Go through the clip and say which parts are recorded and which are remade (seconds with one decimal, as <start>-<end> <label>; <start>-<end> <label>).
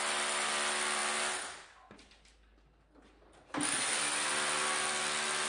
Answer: 0.0-5.5 recorded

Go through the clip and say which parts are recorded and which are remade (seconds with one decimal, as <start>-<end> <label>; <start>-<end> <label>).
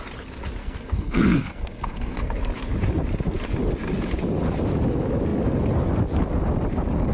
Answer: 0.0-0.6 recorded; 0.6-2.3 remade; 2.3-7.1 recorded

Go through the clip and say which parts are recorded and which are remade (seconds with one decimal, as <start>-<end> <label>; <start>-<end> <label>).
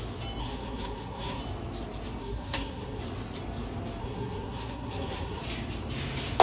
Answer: 0.0-0.4 recorded; 0.4-1.4 remade; 1.4-2.2 recorded; 2.2-3.0 remade; 3.0-4.0 recorded; 4.0-5.4 remade; 5.4-6.4 recorded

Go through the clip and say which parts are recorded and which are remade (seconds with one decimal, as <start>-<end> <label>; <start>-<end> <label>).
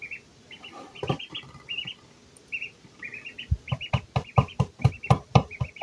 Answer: 0.0-5.8 recorded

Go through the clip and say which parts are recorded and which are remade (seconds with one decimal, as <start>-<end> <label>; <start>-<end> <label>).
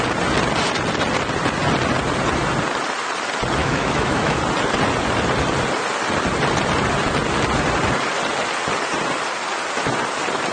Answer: 0.0-3.6 recorded; 3.6-4.4 remade; 4.4-10.5 recorded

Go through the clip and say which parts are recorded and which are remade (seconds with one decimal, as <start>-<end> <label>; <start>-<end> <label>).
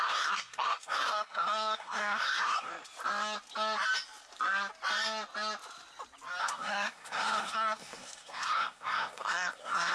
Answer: 0.0-2.7 remade; 2.7-6.4 recorded; 6.4-9.9 remade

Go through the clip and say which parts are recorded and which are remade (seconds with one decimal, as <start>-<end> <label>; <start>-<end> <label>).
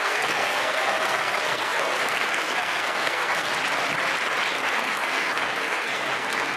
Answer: 0.0-3.5 remade; 3.5-4.5 recorded; 4.5-6.6 remade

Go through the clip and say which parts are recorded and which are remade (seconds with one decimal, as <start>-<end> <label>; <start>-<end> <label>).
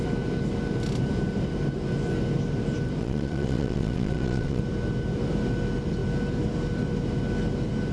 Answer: 0.0-3.0 recorded; 3.0-4.6 remade; 4.6-7.9 recorded